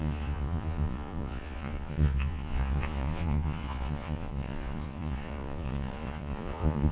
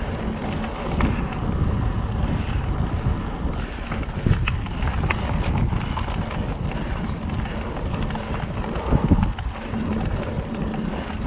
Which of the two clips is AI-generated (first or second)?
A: first